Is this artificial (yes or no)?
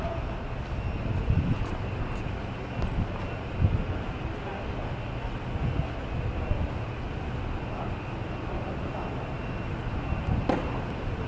no